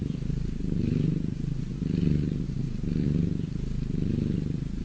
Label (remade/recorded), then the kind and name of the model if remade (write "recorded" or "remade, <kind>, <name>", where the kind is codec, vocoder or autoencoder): recorded